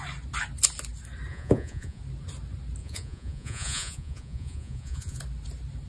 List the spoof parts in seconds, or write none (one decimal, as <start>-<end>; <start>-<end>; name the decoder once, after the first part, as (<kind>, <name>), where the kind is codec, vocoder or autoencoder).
1.3-2.0 (vocoder, Vocos); 2.8-5.2